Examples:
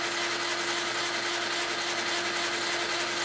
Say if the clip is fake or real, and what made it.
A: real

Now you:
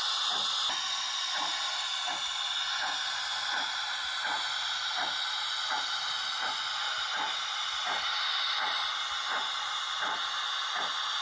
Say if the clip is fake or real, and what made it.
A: real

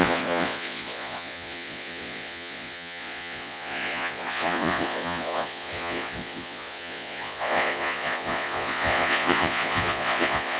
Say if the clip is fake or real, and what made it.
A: fake, vocoder, Vocos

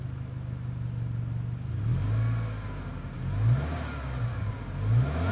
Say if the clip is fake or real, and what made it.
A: real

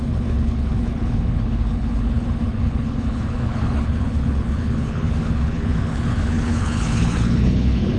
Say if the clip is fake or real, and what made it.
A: fake, codec, HILCodec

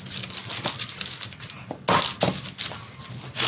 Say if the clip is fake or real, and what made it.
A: real